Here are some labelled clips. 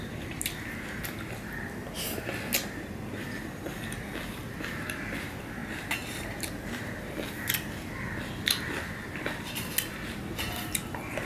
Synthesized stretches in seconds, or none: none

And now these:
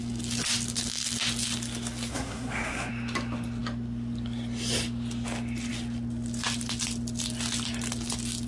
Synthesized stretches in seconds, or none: 2.1-2.9 (codec, SNAC)

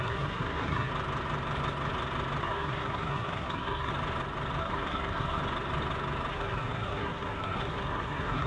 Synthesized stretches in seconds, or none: 0.0-0.9 (codec, SNAC); 2.4-3.9; 4.6-5.4; 6.3-8.5

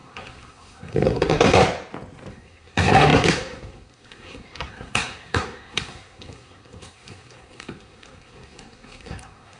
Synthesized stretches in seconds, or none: 0.0-1.6 (codec, SNAC); 2.3-9.6